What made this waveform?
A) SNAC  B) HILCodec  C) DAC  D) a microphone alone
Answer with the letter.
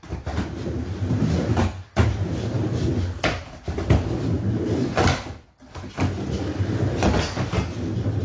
D